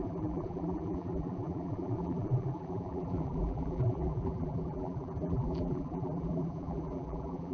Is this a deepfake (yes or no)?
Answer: yes